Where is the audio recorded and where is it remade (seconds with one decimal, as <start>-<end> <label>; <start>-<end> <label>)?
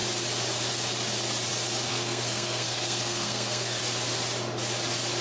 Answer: 0.0-1.9 recorded; 1.9-3.8 remade; 3.8-5.2 recorded